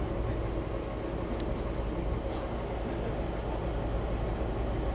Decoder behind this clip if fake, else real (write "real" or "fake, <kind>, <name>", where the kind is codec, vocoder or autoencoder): real